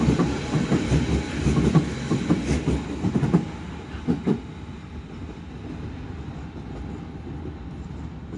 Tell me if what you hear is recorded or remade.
recorded